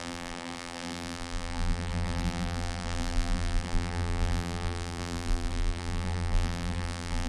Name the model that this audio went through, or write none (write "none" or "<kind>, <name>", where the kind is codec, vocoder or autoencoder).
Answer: vocoder, BigVGAN v2